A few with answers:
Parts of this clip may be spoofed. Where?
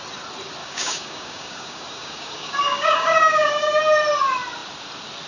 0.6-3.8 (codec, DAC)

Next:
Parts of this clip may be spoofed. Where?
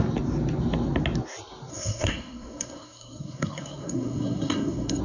1.7-5.0 (codec, SNAC)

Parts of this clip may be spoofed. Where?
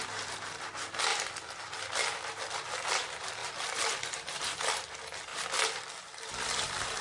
3.4-4.3 (vocoder, BigVGAN v2); 5.3-7.0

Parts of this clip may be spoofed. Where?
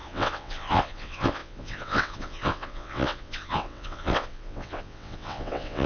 0.0-5.9 (vocoder, WaveNeXt)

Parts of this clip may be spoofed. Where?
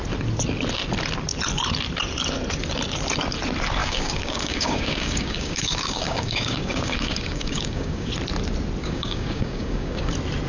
3.8-8.1 (codec, DAC); 8.8-10.1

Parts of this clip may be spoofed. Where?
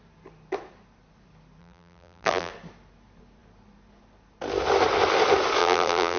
1.6-2.5 (vocoder, BigVGAN v2); 5.6-6.2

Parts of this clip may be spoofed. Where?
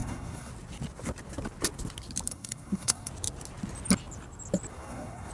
0.0-0.5 (codec, SNAC); 2.3-3.1; 4.7-5.3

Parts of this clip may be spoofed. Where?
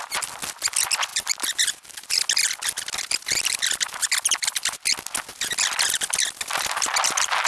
none